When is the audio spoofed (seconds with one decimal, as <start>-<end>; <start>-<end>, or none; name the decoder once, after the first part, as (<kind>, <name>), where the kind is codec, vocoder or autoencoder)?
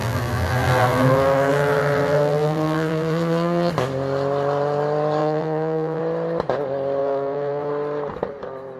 0.0-3.7 (vocoder, BigVGAN v2); 5.2-6.0; 7.0-7.7